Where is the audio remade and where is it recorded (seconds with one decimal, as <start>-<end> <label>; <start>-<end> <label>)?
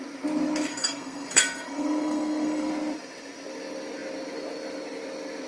0.0-0.7 recorded; 0.7-2.7 remade; 2.7-5.5 recorded